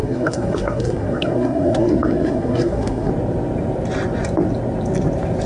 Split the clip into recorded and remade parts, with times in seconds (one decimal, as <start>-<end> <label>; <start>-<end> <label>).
0.0-3.1 remade; 3.1-5.5 recorded